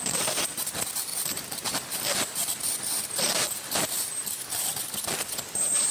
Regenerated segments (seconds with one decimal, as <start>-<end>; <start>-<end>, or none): 1.1-4.1